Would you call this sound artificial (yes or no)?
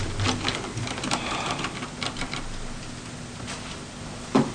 no